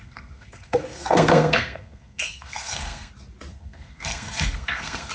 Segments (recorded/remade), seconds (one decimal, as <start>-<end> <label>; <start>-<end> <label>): 0.0-3.1 remade; 3.1-3.5 recorded; 3.5-5.1 remade